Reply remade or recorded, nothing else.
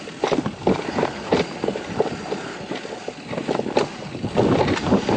recorded